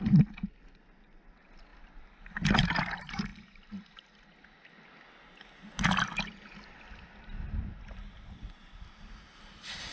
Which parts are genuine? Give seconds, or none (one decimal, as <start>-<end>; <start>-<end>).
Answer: 0.0-9.9

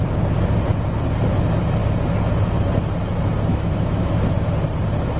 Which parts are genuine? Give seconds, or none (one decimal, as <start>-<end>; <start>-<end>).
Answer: 0.0-3.5; 4.5-5.2

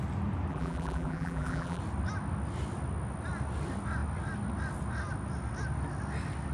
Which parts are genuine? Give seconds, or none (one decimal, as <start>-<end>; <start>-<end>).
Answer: 0.0-0.5; 1.8-6.5

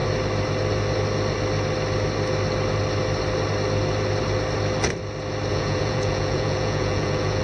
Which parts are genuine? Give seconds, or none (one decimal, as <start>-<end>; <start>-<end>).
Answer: 0.0-5.5